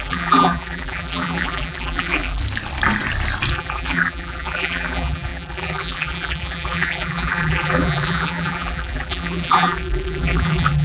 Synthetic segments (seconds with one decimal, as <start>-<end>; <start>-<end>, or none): 0.0-2.4; 3.5-10.8